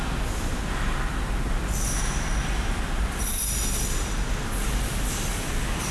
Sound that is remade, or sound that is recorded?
recorded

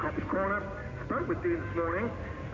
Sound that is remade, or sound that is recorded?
recorded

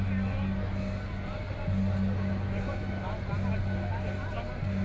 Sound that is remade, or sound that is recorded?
recorded